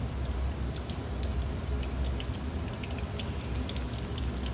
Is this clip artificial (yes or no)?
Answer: no